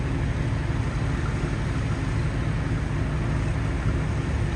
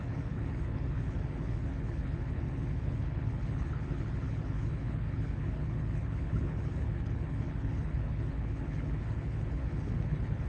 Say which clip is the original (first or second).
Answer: first